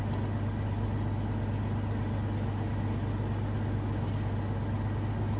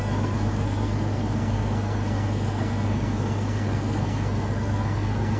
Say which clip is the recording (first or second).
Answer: first